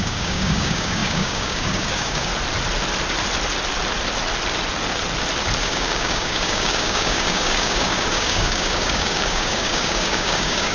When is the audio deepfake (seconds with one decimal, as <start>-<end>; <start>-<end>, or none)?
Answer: 0.0-2.3; 5.6-10.7